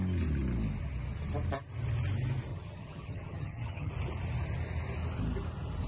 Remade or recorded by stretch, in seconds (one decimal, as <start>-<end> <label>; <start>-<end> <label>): 0.0-2.5 recorded; 2.5-3.9 remade; 3.9-5.9 recorded